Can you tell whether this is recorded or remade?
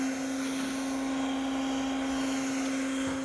recorded